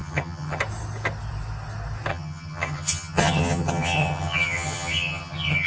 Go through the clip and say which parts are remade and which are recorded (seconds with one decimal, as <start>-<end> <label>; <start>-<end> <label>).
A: 0.0-0.6 remade; 0.6-2.1 recorded; 2.1-5.7 remade